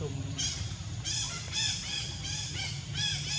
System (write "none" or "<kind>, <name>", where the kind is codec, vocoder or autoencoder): none